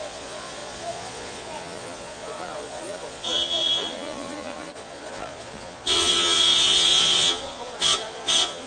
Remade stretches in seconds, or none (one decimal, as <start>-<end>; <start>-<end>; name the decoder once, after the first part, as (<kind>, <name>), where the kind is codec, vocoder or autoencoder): 0.0-8.7 (vocoder, Vocos)